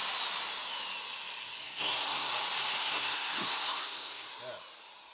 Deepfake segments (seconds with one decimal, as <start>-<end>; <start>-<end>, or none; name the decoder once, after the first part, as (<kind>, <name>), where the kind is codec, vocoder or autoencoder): 1.6-2.3 (codec, SNAC); 2.8-4.3